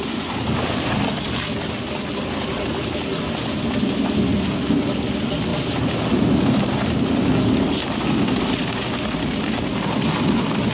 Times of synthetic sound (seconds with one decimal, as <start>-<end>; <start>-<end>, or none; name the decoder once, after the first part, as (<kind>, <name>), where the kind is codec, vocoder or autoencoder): none